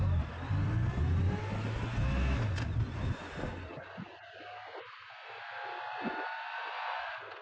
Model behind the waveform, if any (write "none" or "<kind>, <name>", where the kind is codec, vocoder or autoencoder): none